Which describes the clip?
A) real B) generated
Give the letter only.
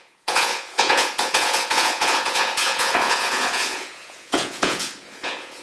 B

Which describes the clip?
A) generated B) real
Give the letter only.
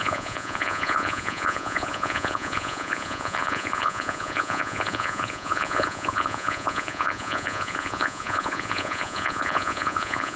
A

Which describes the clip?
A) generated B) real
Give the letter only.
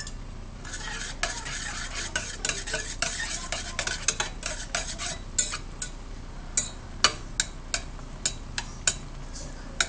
B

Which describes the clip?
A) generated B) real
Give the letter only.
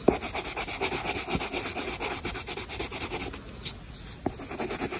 B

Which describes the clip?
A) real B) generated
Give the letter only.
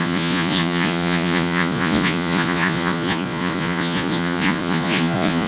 B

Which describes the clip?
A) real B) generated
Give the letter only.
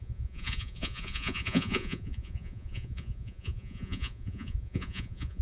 B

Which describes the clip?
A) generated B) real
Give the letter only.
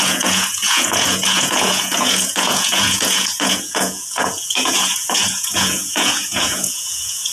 A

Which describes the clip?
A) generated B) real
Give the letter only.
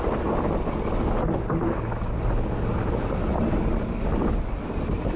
B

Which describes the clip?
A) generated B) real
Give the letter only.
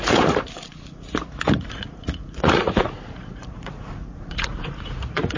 A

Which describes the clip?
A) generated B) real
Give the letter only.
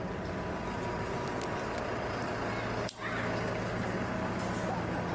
B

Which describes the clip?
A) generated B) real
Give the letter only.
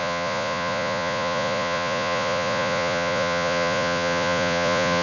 A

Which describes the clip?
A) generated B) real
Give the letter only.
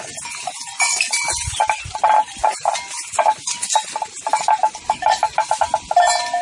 B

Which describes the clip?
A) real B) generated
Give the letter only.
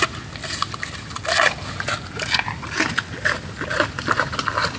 A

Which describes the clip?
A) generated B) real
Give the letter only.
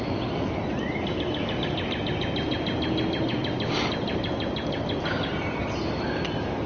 B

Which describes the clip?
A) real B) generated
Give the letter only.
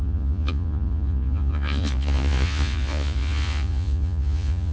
B